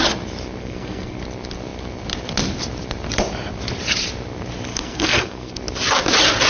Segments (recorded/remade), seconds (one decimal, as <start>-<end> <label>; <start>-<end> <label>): 0.0-0.6 recorded; 0.6-1.2 remade; 1.2-4.7 recorded; 4.7-5.6 remade; 5.6-6.5 recorded